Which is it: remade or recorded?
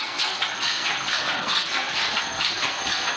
remade